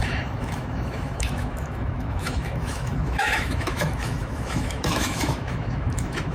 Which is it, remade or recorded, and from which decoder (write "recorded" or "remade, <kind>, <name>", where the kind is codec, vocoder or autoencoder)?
remade, autoencoder, DAC-VAE